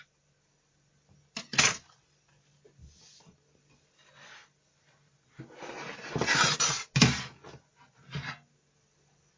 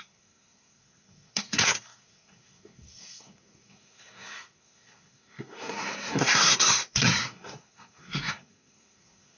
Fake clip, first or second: second